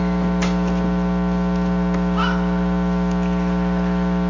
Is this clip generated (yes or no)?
no